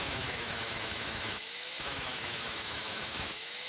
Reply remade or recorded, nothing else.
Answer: remade